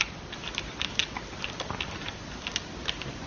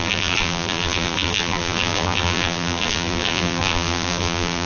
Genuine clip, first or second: first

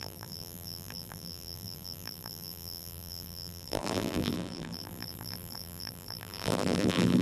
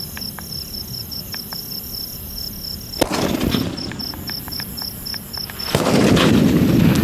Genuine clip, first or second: second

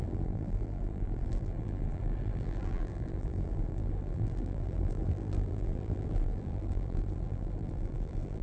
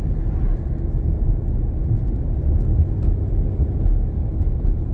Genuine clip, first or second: second